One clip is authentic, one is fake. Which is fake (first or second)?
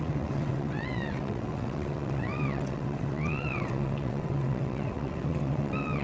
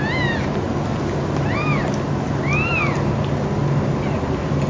first